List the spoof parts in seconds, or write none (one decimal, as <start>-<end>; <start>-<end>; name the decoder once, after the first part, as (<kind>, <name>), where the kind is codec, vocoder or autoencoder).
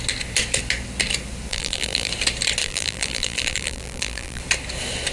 1.5-2.1 (vocoder, BigVGAN v2); 2.6-4.4